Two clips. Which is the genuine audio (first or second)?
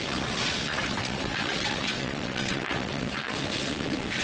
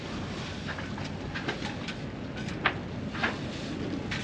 second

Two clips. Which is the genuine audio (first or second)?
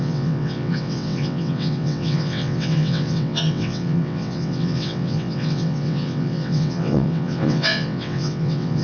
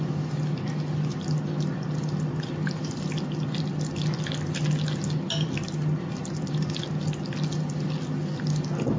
second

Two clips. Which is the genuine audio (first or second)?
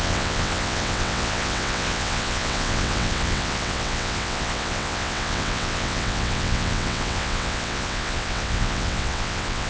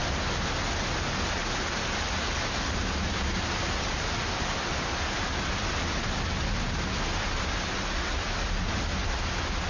second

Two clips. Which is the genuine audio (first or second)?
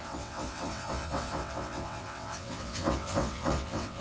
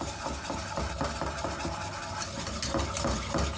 second